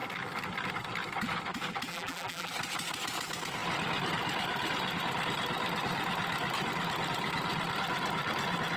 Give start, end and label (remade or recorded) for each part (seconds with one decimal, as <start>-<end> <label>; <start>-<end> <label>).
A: 0.0-1.9 recorded; 1.9-2.5 remade; 2.5-8.8 recorded